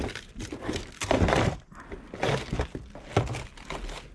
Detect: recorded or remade recorded